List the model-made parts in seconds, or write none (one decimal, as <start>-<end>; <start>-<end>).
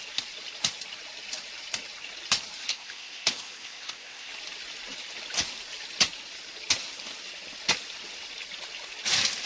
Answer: 2.7-4.3